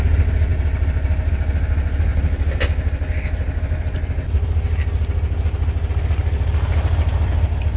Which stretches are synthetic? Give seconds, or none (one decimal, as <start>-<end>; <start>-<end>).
none